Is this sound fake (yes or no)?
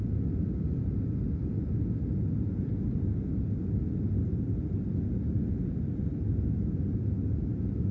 no